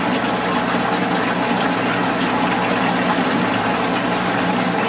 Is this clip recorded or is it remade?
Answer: recorded